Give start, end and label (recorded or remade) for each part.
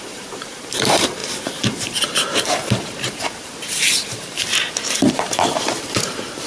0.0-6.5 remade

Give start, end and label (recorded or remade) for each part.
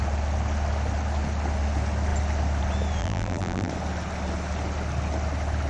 0.0-3.0 recorded; 3.0-3.7 remade; 3.7-5.7 recorded